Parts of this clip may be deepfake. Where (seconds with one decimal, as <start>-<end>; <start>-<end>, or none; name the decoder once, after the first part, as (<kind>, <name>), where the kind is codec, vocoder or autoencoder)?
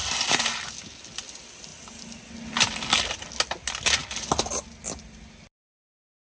none